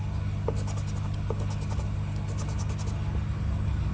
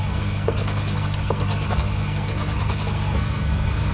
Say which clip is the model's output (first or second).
second